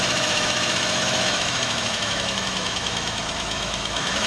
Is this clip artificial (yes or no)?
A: yes